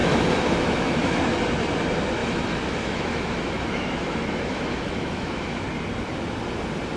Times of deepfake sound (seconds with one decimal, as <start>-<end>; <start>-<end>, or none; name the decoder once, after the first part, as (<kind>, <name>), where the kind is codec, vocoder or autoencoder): 0.0-1.2 (autoencoder, DAC-VAE); 2.2-5.6

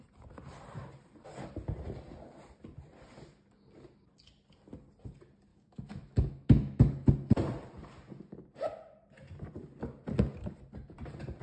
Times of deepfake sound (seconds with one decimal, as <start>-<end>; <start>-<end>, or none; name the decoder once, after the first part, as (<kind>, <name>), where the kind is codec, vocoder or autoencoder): 5.5-7.1 (autoencoder, DAC-VAE)

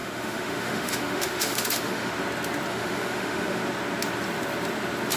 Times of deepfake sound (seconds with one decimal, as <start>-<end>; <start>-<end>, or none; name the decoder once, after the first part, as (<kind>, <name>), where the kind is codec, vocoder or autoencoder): 0.0-2.1 (autoencoder, DAC-VAE); 2.7-3.6

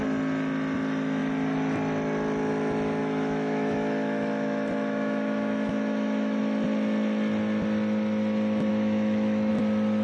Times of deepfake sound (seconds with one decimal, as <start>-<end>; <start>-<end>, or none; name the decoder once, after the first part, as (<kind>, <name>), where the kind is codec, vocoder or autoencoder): 3.0-6.4 (autoencoder, DAC-VAE); 8.7-9.5

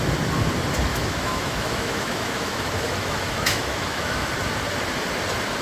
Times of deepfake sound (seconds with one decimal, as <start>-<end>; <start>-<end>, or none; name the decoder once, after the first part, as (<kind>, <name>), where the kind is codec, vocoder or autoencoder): 0.9-4.3 (autoencoder, DAC-VAE)